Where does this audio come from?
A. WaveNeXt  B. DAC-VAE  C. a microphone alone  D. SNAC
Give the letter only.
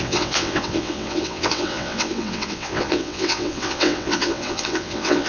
A